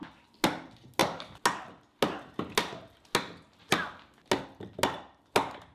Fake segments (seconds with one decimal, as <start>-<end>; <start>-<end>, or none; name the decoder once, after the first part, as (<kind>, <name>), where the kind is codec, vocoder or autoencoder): none